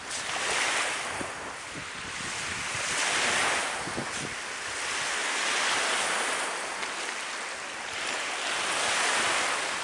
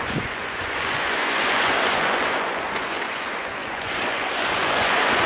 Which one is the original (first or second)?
first